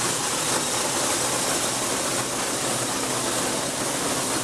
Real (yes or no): yes